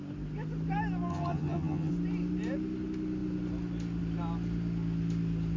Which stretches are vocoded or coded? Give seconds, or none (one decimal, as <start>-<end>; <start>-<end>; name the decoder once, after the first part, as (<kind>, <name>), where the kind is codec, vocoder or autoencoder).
1.1-1.9 (vocoder, HiFi-GAN)